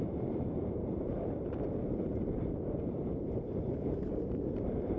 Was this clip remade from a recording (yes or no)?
yes